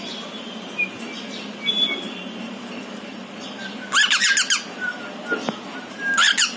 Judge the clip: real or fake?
real